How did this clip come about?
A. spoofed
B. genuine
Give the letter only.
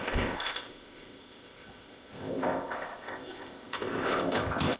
A